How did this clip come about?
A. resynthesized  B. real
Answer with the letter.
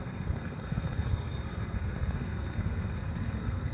A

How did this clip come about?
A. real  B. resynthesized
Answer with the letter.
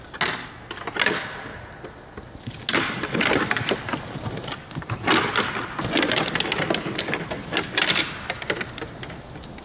A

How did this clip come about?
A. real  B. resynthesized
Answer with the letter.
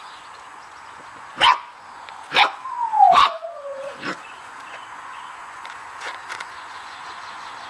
B